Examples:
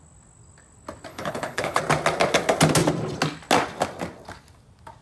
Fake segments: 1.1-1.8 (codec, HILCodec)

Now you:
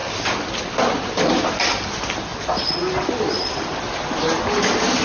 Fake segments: none

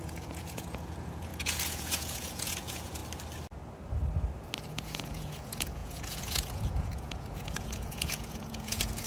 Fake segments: 0.0-3.0 (vocoder, Vocos); 4.7-9.1

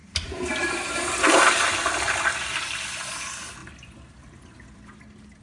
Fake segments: 0.0-3.2 (vocoder, BigVGAN v2); 3.6-5.0

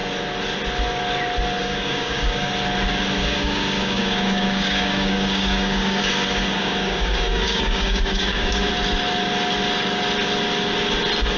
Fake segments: 1.6-2.5 (codec, DAC); 3.2-6.0; 6.6-8.7

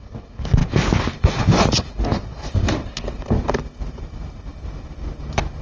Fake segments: none